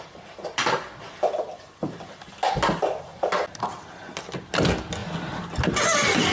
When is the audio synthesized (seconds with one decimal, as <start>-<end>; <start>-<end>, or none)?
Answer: none